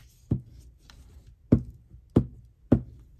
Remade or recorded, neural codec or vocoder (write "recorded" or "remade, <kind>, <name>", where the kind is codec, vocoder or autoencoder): recorded